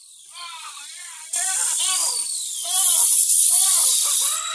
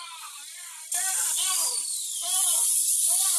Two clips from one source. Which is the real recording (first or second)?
first